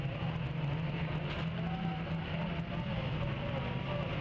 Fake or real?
real